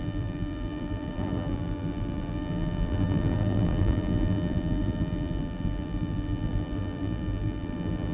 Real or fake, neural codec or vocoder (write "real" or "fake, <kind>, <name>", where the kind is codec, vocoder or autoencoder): fake, vocoder, BigVGAN v2